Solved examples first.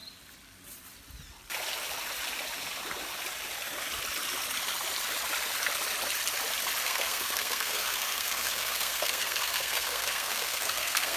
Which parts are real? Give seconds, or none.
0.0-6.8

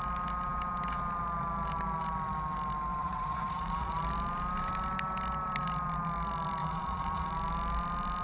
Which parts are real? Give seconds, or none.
0.0-3.0; 4.0-6.6; 7.3-8.2

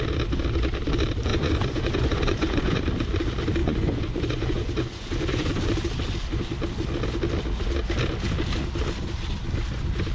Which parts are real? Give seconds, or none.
0.0-1.3; 2.8-3.6; 5.5-10.1

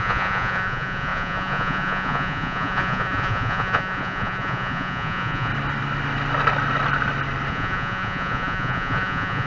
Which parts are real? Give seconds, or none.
5.5-7.5